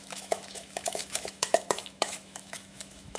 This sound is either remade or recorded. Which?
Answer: remade